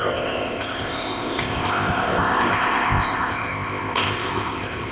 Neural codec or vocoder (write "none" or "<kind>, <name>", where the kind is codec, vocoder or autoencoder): codec, ZipCodec